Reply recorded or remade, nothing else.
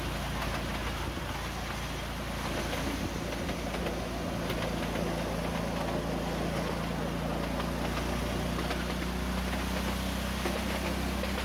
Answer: recorded